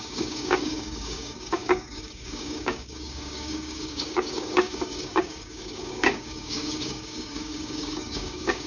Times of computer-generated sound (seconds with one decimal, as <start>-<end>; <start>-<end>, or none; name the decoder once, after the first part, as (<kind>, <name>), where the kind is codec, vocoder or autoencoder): 0.0-8.7 (codec, DAC)